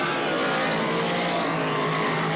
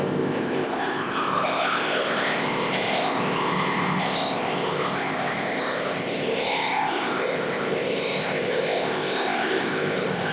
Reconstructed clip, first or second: second